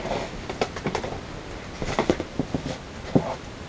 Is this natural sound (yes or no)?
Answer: yes